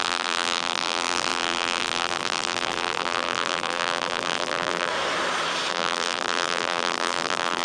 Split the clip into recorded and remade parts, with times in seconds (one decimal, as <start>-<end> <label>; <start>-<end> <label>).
0.0-4.9 remade; 4.9-5.7 recorded; 5.7-7.6 remade